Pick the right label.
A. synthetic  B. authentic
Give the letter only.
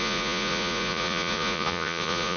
A